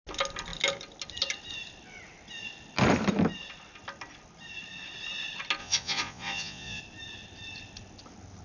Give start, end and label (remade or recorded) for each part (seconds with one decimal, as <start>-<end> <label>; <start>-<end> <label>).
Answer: 0.0-5.6 recorded; 5.6-6.8 remade; 6.8-8.4 recorded